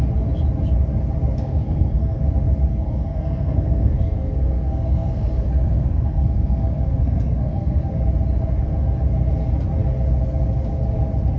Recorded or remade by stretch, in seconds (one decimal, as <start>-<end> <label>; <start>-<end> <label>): 0.0-1.4 recorded; 1.4-2.2 remade; 2.2-2.7 recorded; 2.7-7.8 remade; 7.8-11.4 recorded